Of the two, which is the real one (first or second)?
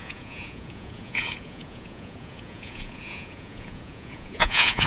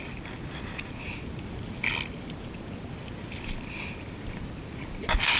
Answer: second